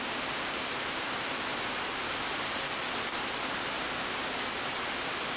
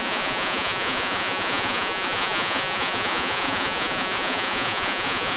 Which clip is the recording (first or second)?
first